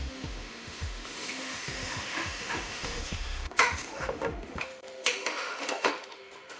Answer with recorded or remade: remade